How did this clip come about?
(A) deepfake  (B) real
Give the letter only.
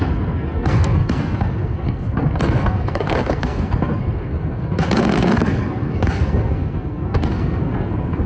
A